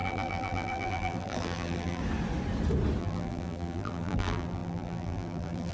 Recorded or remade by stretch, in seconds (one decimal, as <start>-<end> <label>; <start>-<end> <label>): 0.0-2.0 remade; 2.0-3.0 recorded; 3.0-5.7 remade